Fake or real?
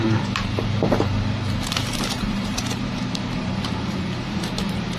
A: fake